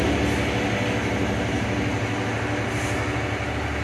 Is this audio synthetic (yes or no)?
no